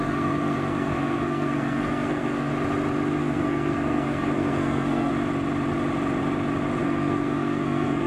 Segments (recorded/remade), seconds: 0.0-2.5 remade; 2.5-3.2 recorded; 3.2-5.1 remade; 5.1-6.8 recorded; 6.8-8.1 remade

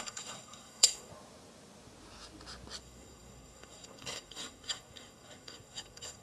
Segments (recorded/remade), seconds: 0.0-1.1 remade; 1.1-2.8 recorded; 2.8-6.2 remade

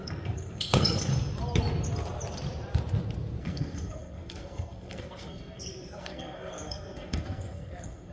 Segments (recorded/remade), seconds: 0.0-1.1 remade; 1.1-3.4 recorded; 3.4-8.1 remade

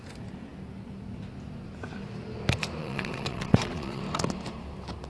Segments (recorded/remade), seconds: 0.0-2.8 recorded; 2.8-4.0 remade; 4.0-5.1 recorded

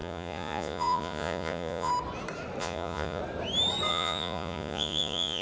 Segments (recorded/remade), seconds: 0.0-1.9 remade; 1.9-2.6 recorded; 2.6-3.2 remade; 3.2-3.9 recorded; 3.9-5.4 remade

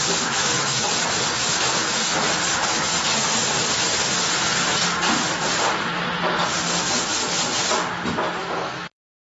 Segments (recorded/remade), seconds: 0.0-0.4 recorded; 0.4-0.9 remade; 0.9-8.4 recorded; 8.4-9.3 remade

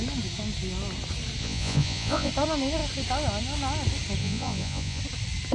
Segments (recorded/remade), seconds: 0.0-1.4 recorded; 1.4-2.3 remade; 2.3-4.2 recorded; 4.2-5.0 remade; 5.0-5.5 recorded

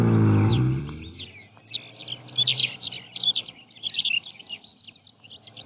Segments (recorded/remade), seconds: 0.0-0.5 recorded; 0.5-1.1 remade; 1.1-2.6 recorded; 2.6-5.7 remade